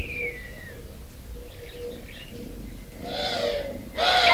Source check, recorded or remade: recorded